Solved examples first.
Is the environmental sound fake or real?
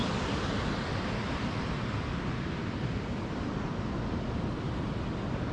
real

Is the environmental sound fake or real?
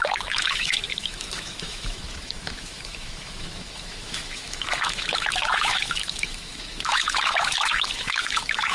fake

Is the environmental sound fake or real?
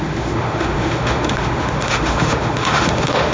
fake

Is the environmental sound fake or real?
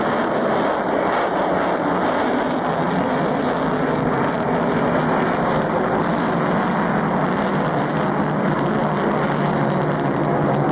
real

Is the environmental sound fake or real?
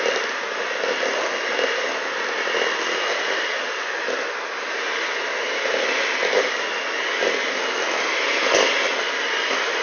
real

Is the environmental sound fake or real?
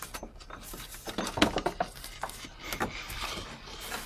real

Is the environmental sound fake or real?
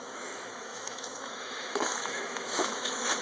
fake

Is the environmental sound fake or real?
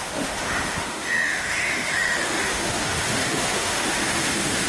fake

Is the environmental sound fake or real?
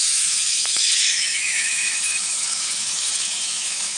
fake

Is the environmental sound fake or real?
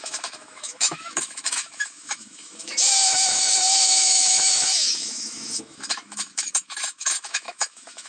fake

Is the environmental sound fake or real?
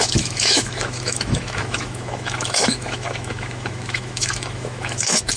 fake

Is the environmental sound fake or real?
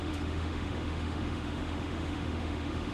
fake